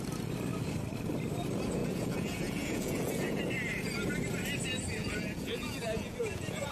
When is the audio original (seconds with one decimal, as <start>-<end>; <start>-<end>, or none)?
0.0-1.8; 3.4-5.0